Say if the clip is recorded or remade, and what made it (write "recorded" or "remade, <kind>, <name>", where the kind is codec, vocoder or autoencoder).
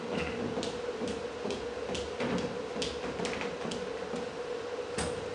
recorded